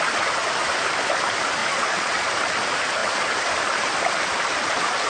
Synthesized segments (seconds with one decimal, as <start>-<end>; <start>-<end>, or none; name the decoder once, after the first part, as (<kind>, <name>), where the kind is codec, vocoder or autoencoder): 1.6-2.3 (vocoder, Vocos)